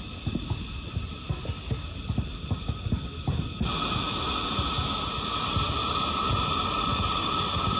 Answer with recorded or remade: recorded